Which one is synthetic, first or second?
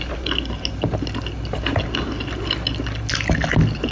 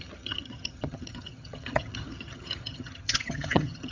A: second